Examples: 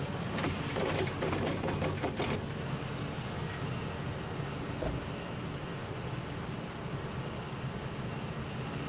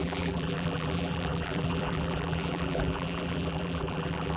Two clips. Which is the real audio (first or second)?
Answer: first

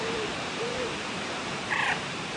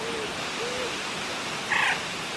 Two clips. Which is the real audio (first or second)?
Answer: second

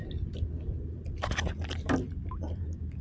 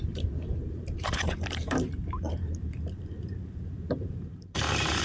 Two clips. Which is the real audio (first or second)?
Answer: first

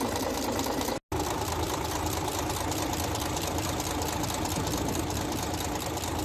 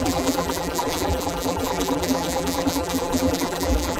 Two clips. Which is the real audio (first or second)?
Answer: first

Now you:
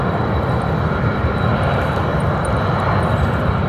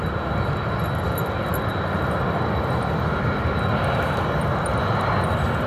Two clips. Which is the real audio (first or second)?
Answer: second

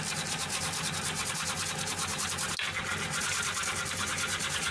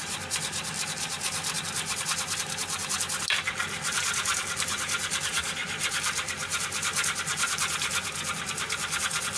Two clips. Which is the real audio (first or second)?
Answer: first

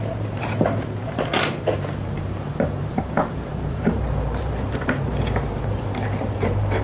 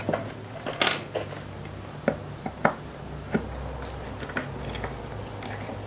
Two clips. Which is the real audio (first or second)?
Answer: second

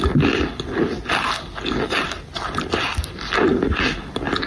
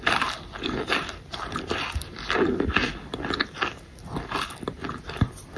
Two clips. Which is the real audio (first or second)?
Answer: first